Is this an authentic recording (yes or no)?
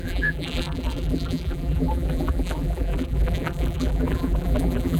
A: no